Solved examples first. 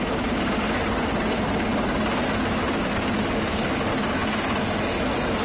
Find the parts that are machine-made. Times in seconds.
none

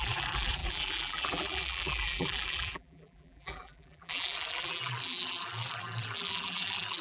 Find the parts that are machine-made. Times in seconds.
0.0-7.0